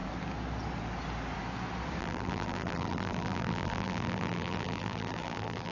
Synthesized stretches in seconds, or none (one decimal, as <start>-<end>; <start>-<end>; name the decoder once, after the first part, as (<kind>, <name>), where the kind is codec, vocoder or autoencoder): 2.0-5.7 (vocoder, BigVGAN v2)